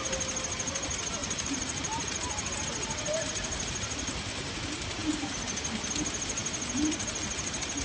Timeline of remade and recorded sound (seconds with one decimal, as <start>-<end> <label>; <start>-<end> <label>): 0.0-1.2 recorded; 1.2-2.5 remade; 2.5-7.8 recorded